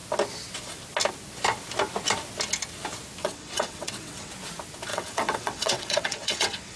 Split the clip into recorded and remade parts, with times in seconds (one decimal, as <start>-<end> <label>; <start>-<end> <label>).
0.0-3.2 recorded; 3.2-4.3 remade; 4.3-4.9 recorded; 4.9-6.8 remade